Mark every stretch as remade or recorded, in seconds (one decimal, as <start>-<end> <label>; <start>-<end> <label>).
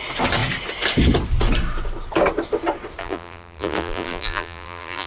0.0-3.0 recorded; 3.0-5.1 remade